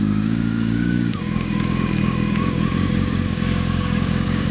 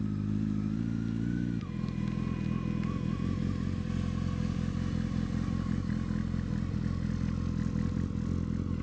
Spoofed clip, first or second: first